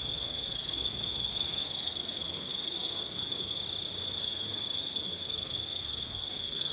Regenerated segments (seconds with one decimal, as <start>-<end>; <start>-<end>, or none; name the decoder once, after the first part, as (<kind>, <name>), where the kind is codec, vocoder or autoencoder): 0.0-3.6 (codec, SNAC); 4.2-6.7